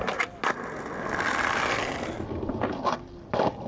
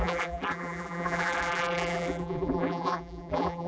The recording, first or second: first